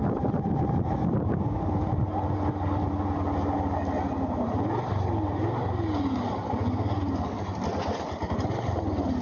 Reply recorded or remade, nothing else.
recorded